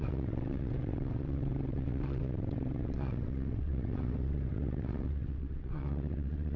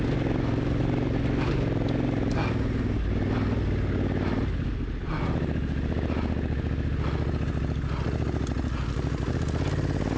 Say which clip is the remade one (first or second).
first